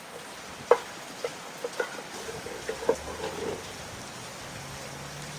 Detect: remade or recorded recorded